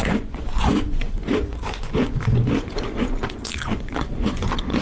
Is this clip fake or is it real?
fake